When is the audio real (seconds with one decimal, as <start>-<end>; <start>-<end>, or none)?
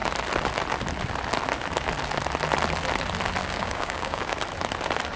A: 0.0-3.4; 4.3-5.2